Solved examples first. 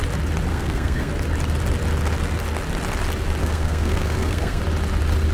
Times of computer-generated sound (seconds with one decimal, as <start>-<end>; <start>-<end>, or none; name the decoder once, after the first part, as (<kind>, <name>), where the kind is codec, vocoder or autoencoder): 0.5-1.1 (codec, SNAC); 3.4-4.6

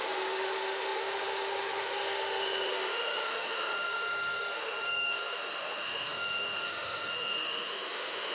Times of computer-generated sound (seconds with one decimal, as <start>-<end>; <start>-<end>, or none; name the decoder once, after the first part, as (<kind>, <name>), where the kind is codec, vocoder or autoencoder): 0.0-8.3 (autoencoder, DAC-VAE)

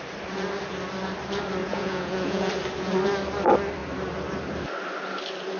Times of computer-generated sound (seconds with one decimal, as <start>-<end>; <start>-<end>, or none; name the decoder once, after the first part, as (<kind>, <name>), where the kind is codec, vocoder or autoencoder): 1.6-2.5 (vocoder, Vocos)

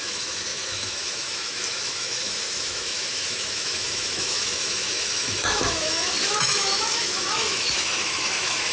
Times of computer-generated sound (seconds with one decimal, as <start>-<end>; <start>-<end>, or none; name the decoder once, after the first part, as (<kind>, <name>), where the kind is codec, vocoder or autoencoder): 0.0-8.7 (autoencoder, DAC-VAE)